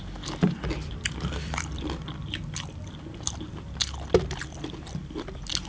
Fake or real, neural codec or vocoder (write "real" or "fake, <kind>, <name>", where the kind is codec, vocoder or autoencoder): fake, vocoder, BigVGAN v2